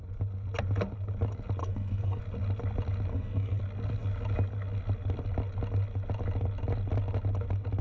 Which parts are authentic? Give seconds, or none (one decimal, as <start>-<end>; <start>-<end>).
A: 0.0-1.6; 2.2-3.1; 3.6-7.8